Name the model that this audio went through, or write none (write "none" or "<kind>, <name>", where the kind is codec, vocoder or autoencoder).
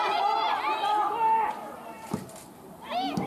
none